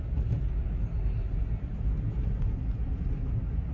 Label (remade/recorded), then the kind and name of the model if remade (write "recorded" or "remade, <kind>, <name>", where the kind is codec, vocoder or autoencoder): recorded